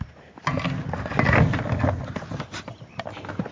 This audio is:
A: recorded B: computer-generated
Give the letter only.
A